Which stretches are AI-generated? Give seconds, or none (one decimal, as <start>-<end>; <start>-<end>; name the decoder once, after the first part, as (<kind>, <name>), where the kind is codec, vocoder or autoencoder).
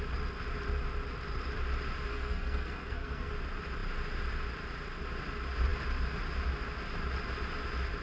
2.1-3.3 (codec, SNAC)